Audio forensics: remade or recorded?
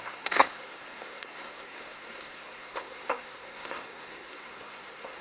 remade